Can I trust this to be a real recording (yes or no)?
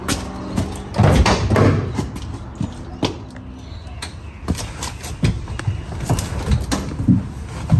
yes